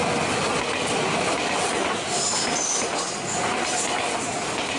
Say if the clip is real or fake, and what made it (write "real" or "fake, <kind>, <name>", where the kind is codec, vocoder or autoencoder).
real